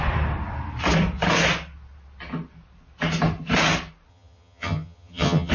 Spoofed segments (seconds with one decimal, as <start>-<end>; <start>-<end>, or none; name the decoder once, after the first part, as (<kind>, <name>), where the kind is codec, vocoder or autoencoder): 4.1-5.5 (vocoder, HiFi-GAN)